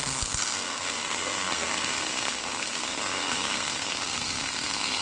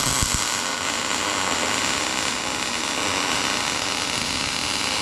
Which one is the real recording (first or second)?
second